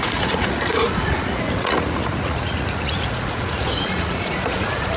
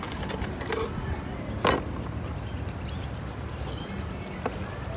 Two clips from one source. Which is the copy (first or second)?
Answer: first